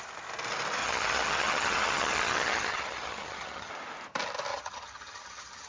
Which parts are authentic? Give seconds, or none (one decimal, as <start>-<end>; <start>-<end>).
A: 0.0-0.8; 3.7-4.5